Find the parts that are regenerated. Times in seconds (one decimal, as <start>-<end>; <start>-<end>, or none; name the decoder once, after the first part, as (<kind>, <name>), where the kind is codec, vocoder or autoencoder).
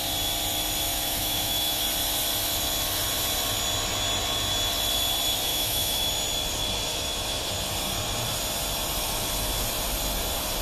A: 0.9-1.8 (autoencoder, DAC-VAE); 5.5-6.1; 6.9-7.5